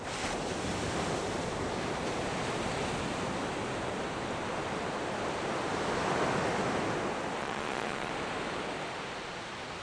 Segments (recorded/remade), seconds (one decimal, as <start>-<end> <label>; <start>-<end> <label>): 0.0-7.4 recorded; 7.4-8.1 remade; 8.1-9.8 recorded